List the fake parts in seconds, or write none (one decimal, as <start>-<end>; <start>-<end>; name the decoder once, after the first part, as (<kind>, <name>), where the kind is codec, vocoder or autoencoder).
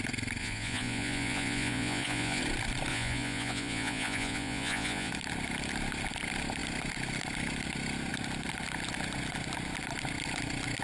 0.4-2.4 (vocoder, Vocos); 2.9-5.1